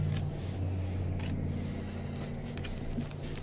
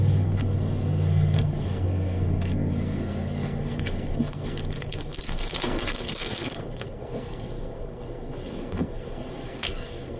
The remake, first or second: second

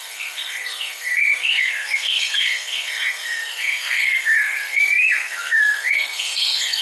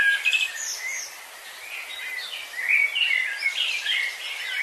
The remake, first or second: first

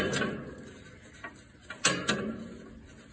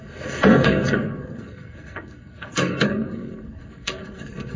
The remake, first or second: second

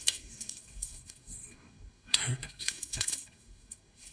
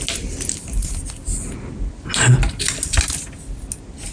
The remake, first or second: first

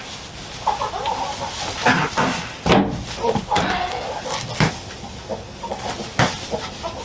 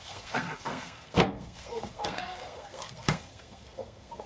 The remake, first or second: second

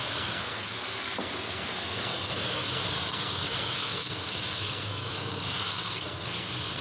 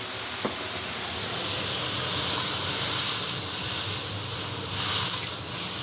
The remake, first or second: first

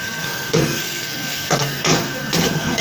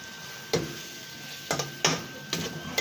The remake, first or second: first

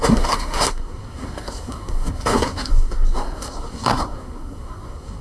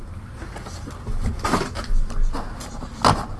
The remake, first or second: first